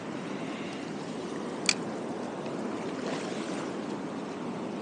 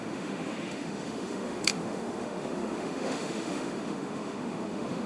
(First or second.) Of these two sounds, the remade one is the second